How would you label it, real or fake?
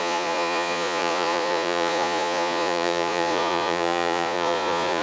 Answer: fake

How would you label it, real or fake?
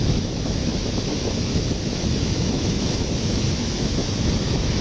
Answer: fake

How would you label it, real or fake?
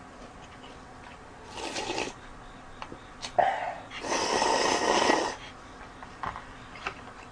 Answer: real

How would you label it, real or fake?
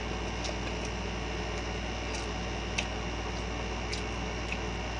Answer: real